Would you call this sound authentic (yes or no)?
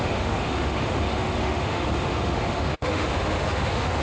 no